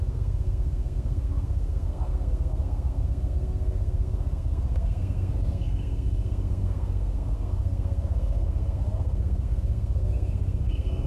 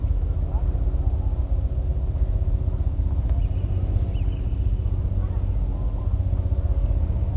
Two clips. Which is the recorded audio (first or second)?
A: second